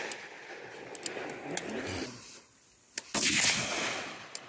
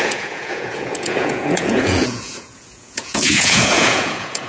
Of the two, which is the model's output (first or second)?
second